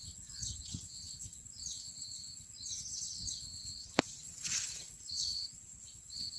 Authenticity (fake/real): fake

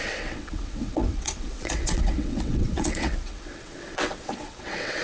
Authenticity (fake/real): fake